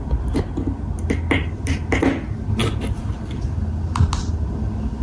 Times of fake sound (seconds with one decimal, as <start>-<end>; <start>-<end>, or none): 2.6-3.5